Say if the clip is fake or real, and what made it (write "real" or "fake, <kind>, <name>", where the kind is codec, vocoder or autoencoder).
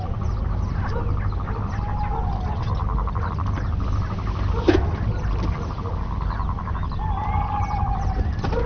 real